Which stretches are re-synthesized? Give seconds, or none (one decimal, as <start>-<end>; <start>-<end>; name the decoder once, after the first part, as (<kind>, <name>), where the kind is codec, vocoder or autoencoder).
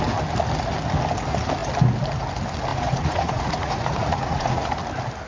2.7-4.7 (vocoder, Vocos)